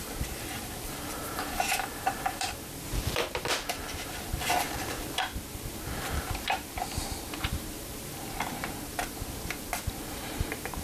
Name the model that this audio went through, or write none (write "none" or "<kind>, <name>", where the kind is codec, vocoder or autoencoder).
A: vocoder, BigVGAN v2